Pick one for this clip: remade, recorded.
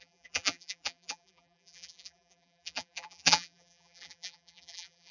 remade